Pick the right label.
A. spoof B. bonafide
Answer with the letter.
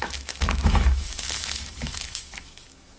A